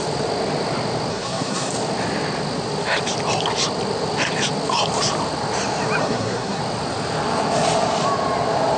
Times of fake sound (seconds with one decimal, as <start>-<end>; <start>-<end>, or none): 1.1-1.7; 6.0-6.6